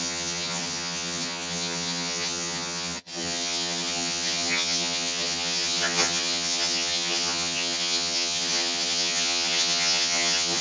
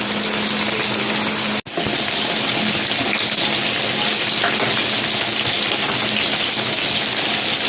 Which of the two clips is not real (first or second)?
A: first